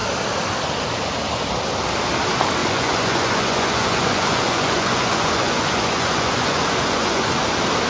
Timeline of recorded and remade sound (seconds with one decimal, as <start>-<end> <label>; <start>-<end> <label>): 0.0-2.6 recorded; 2.6-7.3 remade; 7.3-7.9 recorded